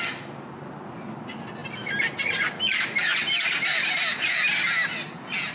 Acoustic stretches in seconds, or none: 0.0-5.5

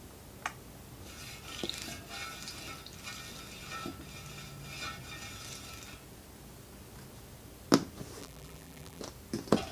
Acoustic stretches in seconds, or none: 0.0-8.2; 9.0-9.7

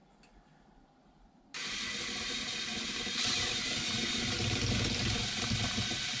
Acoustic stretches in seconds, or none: 0.0-2.7

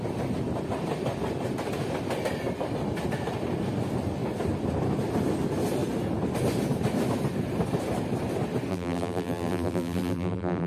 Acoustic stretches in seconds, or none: 0.0-8.7

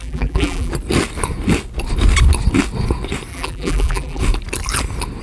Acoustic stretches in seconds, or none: 0.7-3.3; 4.2-5.2

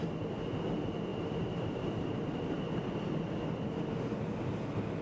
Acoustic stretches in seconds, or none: 0.0-1.1; 2.5-5.0